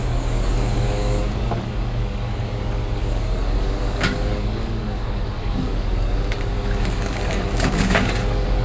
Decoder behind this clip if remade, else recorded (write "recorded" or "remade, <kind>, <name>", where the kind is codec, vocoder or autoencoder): remade, codec, DAC